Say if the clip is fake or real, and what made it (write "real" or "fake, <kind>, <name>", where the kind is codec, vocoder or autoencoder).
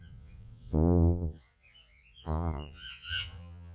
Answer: fake, vocoder, Vocos